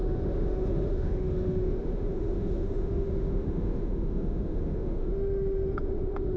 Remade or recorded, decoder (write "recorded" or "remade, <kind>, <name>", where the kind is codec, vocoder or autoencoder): remade, autoencoder, DAC-VAE